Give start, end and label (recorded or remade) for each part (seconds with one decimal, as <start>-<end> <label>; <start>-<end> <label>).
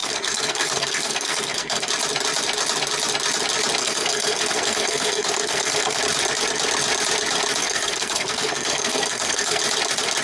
0.0-1.9 remade; 1.9-3.8 recorded; 3.8-6.0 remade; 6.0-7.6 recorded; 7.6-9.6 remade; 9.6-10.2 recorded